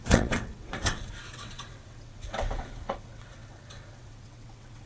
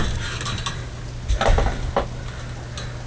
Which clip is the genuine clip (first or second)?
second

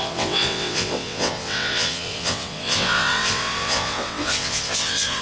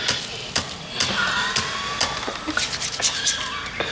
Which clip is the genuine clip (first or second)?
second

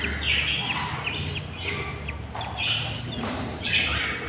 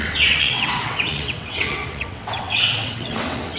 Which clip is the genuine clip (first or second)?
first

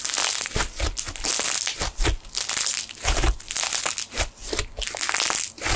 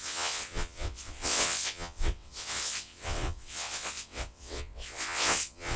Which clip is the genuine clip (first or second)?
first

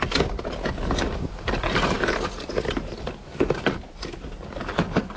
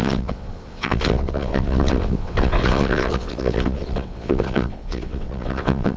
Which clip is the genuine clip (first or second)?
first